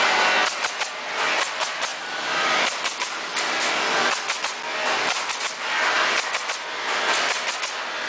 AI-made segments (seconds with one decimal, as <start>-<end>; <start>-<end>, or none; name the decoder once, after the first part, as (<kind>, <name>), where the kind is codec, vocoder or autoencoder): 1.9-5.3 (vocoder, BigVGAN v2)